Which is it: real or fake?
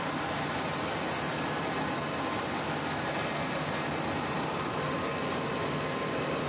real